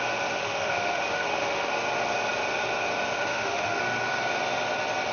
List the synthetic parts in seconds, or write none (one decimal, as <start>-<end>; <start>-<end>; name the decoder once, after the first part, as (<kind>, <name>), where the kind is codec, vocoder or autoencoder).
0.4-1.7 (autoencoder, DAC-VAE); 3.2-3.8